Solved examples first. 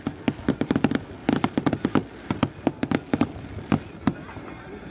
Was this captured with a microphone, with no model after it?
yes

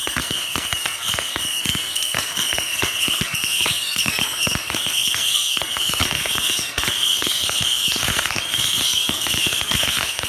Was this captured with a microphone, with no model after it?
no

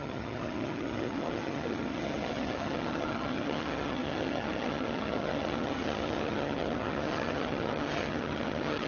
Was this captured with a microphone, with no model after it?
no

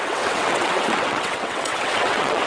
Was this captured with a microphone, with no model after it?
no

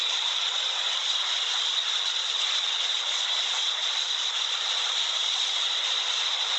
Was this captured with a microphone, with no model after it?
yes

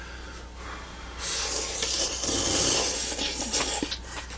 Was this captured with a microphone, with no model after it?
yes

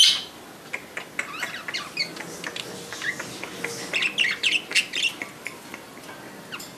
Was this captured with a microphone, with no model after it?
yes